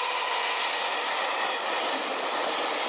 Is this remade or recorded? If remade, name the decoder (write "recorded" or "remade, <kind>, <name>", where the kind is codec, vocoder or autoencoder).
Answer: recorded